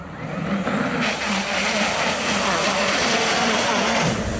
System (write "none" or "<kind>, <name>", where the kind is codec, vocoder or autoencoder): none